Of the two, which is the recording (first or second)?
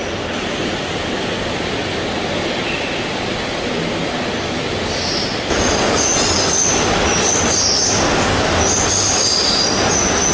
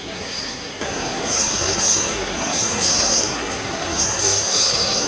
first